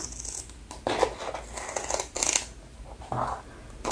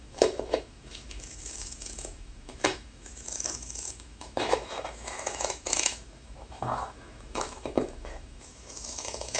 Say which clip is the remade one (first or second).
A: second